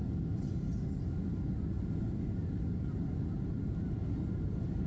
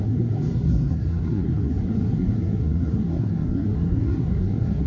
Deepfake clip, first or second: second